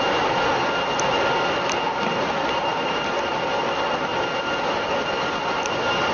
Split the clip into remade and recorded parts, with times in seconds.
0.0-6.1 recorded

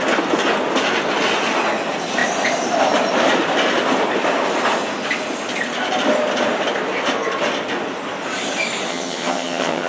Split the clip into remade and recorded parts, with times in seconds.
0.0-8.9 recorded; 8.9-9.9 remade

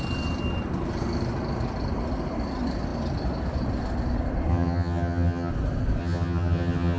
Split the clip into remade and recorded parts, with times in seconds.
0.0-4.5 recorded; 4.5-5.5 remade; 5.5-6.0 recorded; 6.0-7.0 remade

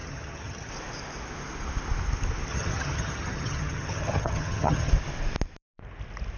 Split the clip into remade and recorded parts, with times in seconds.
0.0-0.7 remade; 0.7-2.5 recorded; 2.5-4.9 remade; 4.9-6.4 recorded

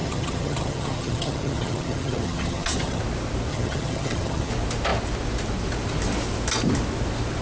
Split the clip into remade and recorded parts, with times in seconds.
0.0-3.0 remade; 3.0-3.5 recorded; 3.5-4.5 remade; 4.5-7.4 recorded

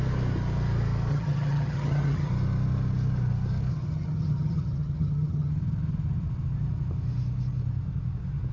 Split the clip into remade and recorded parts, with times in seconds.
0.0-1.1 recorded; 1.1-2.3 remade; 2.3-3.7 recorded; 3.7-5.5 remade; 5.5-8.5 recorded

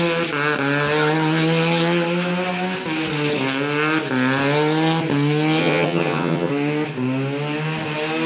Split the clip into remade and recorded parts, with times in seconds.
0.0-5.6 recorded; 5.6-6.5 remade; 6.5-8.3 recorded

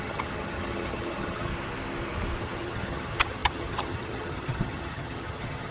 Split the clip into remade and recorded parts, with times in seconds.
0.0-1.5 remade; 1.5-2.4 recorded; 2.4-5.7 remade